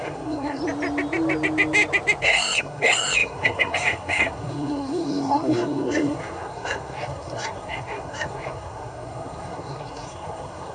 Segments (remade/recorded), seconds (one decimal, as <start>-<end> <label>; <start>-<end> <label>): 0.0-0.6 remade; 0.6-2.2 recorded; 2.2-10.7 remade